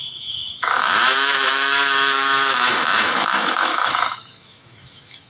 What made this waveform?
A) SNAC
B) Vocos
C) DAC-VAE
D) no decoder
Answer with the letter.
C